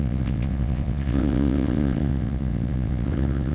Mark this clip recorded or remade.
remade